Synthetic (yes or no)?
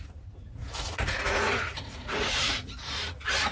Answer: yes